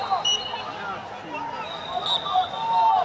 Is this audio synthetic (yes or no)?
no